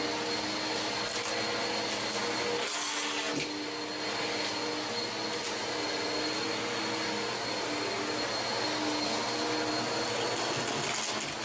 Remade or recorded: recorded